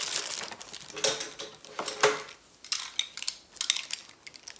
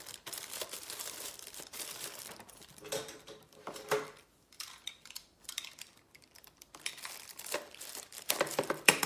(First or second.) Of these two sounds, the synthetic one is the second